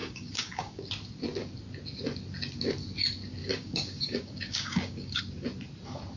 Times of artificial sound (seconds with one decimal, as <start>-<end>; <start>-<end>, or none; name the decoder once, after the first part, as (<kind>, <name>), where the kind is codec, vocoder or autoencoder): 0.0-0.9 (codec, DAC); 3.4-5.2